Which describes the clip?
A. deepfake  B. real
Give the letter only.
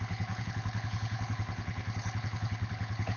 A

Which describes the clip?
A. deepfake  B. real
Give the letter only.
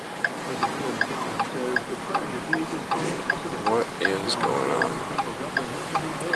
B